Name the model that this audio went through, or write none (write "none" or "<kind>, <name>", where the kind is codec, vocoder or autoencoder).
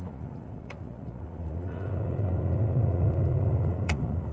vocoder, Vocos